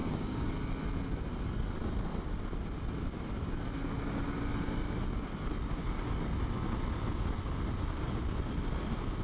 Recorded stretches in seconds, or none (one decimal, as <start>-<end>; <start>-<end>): 0.5-9.2